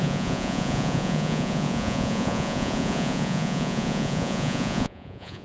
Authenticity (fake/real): fake